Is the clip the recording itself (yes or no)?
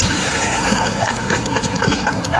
no